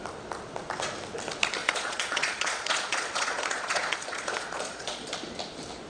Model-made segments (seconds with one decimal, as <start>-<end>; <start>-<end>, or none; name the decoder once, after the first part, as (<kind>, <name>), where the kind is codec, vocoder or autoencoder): 1.6-5.1 (vocoder, Vocos)